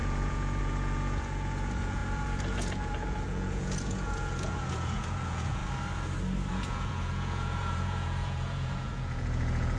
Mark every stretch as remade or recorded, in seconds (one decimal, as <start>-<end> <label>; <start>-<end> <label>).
0.0-5.6 remade; 5.6-6.5 recorded; 6.5-9.8 remade